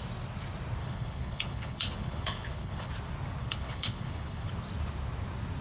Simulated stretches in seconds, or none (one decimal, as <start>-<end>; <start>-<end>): 0.8-2.9; 3.4-4.5